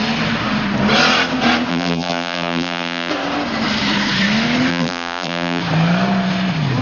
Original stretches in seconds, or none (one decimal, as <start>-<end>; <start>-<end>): 0.0-1.7; 3.1-4.7; 5.6-6.8